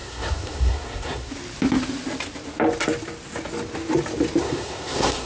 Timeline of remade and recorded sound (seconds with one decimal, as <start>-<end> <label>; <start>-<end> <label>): 0.0-1.3 remade; 1.3-4.4 recorded; 4.4-5.3 remade